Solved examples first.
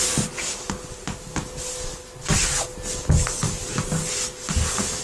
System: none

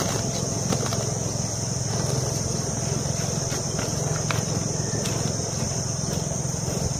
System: none